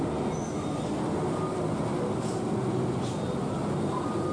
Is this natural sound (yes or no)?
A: yes